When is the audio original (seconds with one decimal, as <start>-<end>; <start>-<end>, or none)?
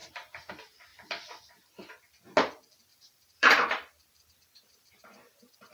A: 0.5-2.9